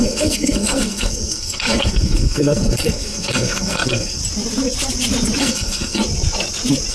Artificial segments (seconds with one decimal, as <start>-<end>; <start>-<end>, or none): 0.0-4.2; 5.4-6.0